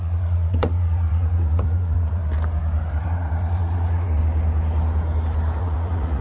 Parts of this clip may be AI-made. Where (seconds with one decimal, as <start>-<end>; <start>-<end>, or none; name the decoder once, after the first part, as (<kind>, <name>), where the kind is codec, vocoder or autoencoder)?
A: 0.0-2.2 (vocoder, Vocos); 3.0-4.2; 5.6-6.2